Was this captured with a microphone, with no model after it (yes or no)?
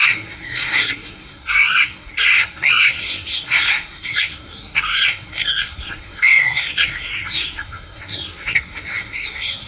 no